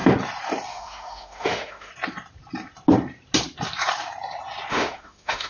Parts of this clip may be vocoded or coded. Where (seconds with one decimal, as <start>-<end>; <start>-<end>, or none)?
0.7-1.9; 4.7-5.5